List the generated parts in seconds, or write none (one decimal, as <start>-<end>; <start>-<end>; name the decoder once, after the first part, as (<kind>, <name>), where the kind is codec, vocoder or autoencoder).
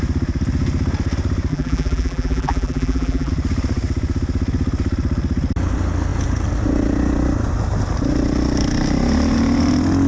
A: 1.5-3.3 (vocoder, BigVGAN v2)